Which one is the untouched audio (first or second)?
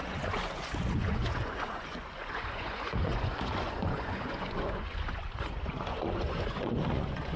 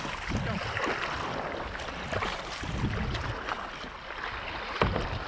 second